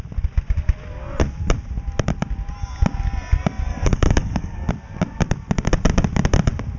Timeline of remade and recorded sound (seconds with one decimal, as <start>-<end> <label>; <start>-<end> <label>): 0.0-3.7 recorded; 3.7-4.7 remade; 4.7-6.8 recorded